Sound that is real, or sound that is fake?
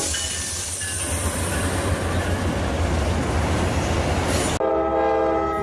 real